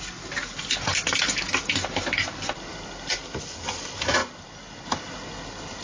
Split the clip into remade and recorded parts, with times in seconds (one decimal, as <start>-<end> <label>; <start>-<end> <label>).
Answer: 0.0-5.8 recorded